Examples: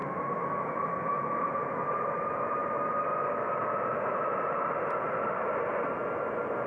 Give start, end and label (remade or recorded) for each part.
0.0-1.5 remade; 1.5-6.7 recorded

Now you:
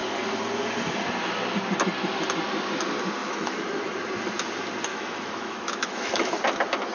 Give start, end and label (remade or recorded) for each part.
0.0-3.2 recorded; 3.2-3.8 remade; 3.8-4.9 recorded; 4.9-6.4 remade; 6.4-6.9 recorded